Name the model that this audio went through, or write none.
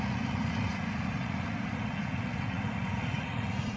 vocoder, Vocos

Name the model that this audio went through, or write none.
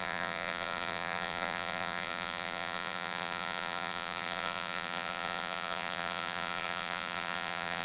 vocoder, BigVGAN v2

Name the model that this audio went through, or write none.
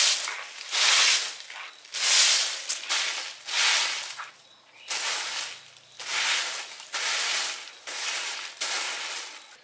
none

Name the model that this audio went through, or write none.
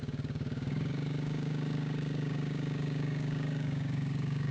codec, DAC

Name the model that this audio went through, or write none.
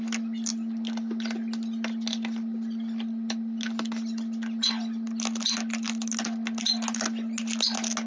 none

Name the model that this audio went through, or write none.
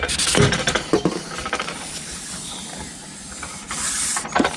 none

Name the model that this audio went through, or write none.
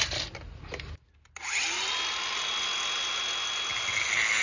none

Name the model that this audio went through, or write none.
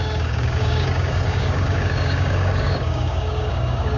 codec, DAC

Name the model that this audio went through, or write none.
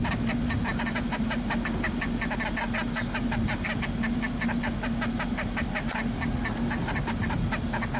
none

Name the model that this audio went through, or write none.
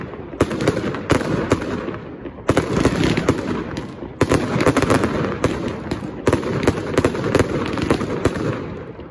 none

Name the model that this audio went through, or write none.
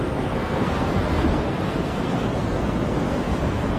codec, SNAC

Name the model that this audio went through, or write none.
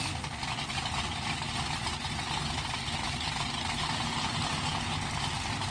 none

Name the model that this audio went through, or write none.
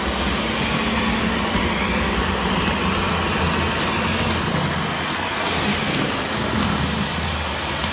none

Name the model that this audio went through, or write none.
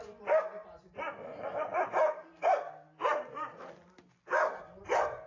none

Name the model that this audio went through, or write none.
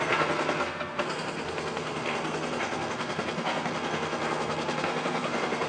codec, SNAC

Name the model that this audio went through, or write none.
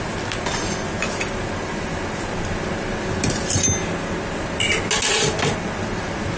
none